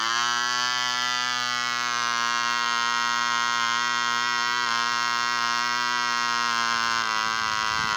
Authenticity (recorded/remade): recorded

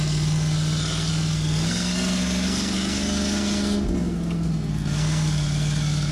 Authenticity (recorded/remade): remade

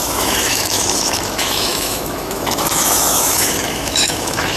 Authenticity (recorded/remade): remade